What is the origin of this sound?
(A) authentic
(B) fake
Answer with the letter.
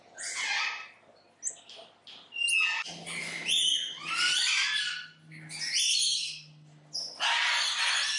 A